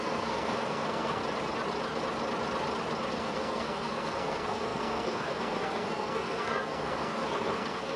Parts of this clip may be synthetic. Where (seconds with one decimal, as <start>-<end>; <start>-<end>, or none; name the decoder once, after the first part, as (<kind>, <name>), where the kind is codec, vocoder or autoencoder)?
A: 0.0-1.2 (codec, SNAC); 3.1-8.0